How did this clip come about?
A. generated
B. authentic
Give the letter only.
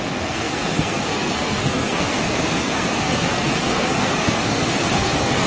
A